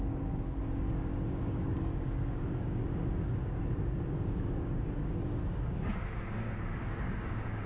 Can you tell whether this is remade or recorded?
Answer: remade